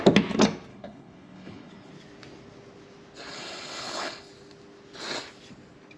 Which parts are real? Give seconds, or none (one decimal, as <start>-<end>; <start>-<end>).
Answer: 0.0-0.7; 1.9-3.3; 4.3-6.0